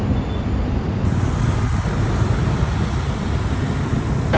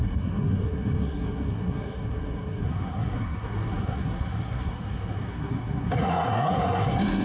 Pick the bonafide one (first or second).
first